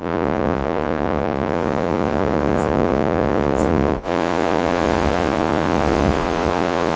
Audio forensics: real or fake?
fake